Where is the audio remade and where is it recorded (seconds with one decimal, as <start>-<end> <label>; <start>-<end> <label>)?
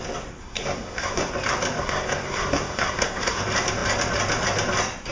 0.0-0.4 recorded; 0.4-1.3 remade; 1.3-1.8 recorded; 1.8-3.4 remade; 3.4-5.1 recorded